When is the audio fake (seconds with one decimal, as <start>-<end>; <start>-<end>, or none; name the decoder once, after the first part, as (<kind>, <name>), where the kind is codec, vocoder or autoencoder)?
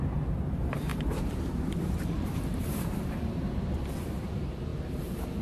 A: 0.0-5.4 (vocoder, BigVGAN v2)